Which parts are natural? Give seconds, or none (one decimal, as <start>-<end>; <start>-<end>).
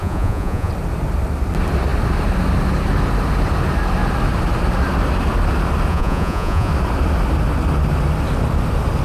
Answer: 0.7-5.9; 6.7-9.0